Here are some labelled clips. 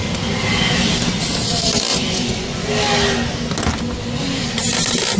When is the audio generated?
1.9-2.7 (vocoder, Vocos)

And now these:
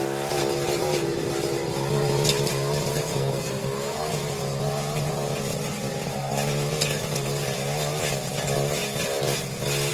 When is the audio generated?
2.9-4.1 (codec, SNAC)